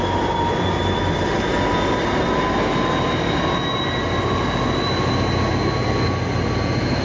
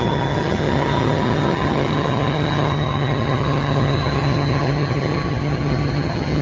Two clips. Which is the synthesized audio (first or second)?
second